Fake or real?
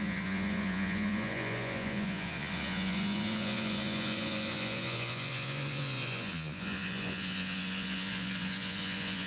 fake